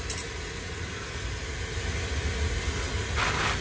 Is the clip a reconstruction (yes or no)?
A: no